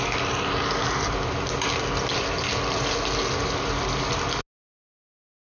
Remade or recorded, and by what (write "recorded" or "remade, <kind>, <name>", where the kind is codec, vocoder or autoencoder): recorded